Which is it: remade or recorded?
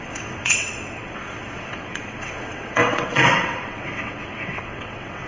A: remade